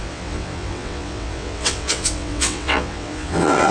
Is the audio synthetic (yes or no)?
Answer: yes